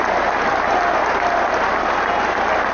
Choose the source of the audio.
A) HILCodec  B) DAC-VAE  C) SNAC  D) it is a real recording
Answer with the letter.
D